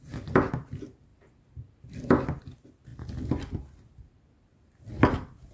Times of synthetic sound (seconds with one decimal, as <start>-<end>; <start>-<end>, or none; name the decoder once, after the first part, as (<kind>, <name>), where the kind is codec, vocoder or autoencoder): none